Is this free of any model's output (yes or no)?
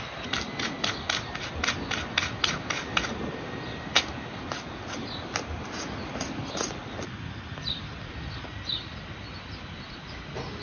yes